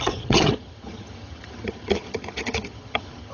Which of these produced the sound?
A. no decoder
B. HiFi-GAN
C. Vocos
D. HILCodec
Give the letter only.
B